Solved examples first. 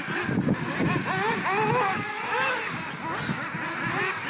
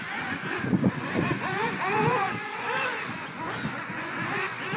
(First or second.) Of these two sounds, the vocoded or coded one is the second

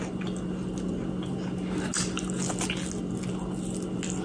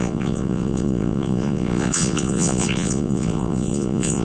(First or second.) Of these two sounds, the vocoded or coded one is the second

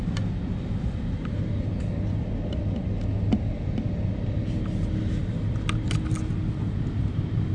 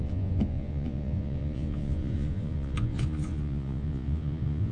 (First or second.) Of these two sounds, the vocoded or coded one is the second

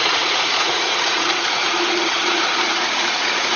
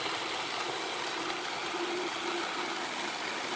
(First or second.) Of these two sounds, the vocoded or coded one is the first